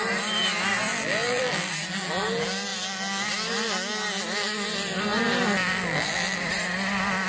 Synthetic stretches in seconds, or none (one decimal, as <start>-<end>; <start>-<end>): 0.9-1.7; 5.6-6.4